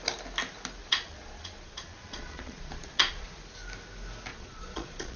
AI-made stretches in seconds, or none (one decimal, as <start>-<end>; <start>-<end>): 0.8-3.4; 4.3-5.2